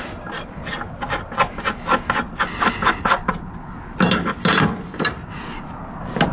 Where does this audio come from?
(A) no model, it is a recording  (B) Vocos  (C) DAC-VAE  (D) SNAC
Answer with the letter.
A